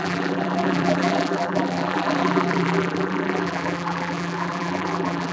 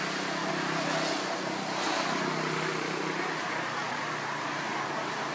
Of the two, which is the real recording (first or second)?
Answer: second